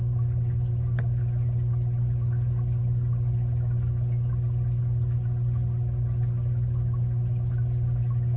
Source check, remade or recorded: recorded